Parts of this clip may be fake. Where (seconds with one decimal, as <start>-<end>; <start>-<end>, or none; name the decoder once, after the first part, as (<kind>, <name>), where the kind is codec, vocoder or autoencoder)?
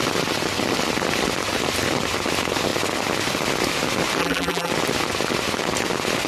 4.2-4.7 (vocoder, BigVGAN v2)